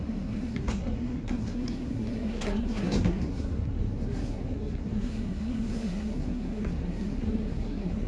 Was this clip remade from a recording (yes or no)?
yes